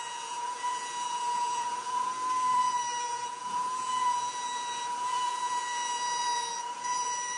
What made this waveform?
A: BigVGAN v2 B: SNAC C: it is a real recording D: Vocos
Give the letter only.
D